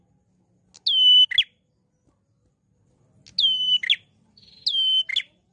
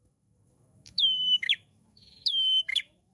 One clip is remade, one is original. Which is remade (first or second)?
second